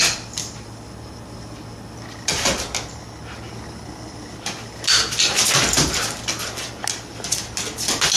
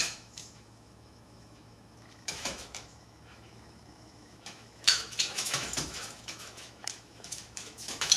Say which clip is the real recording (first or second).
first